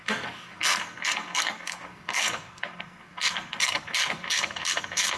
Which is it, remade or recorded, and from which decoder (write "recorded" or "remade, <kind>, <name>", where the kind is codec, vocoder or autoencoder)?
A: remade, codec, SNAC